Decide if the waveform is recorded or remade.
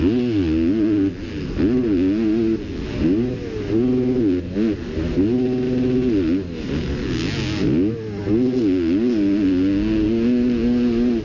recorded